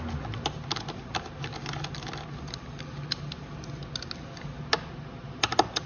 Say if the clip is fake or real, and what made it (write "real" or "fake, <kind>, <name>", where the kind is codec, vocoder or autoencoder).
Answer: real